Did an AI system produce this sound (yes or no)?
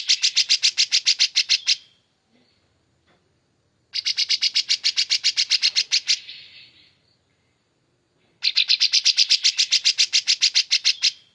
no